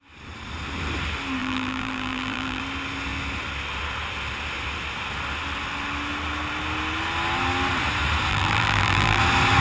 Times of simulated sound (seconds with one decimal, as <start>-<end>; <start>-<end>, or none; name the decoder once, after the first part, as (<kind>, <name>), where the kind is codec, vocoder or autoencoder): 1.4-2.6 (vocoder, BigVGAN v2); 8.3-9.2